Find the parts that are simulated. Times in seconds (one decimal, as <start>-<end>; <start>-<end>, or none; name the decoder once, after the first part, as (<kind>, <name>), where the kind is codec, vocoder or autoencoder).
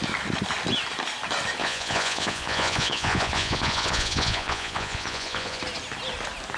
1.6-5.6 (vocoder, Vocos)